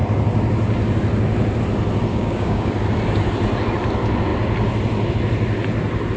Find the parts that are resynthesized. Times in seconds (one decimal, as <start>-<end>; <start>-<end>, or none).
2.1-2.7